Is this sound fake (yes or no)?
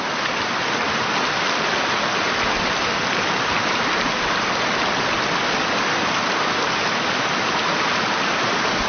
no